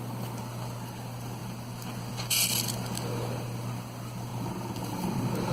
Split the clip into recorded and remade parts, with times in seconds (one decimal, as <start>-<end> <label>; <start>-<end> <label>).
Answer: 0.0-4.3 remade; 4.3-4.9 recorded; 4.9-5.5 remade